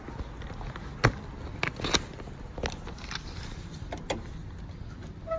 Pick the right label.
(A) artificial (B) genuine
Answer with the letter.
B